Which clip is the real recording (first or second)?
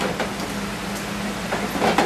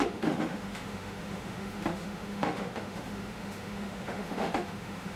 first